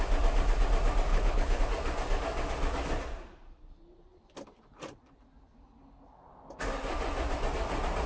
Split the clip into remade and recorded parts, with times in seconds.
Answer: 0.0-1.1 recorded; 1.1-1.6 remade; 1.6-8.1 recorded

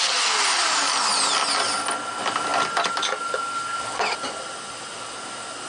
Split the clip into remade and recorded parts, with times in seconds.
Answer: 0.0-5.7 recorded

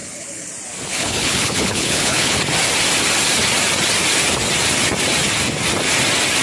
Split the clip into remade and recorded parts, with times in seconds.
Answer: 0.0-0.5 remade; 0.5-0.9 recorded; 0.9-2.4 remade; 2.4-6.4 recorded

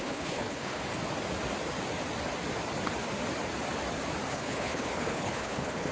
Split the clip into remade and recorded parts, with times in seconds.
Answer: 0.0-0.8 remade; 0.8-4.3 recorded; 4.3-5.9 remade

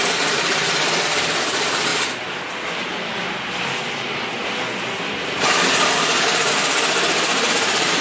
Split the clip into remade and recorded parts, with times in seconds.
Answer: 0.0-8.0 recorded

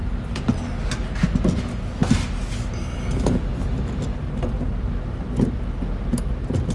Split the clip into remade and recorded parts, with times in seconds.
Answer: 0.0-6.7 recorded

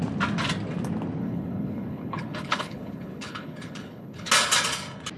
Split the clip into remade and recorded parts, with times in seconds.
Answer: 0.0-1.2 recorded; 1.2-4.3 remade; 4.3-5.2 recorded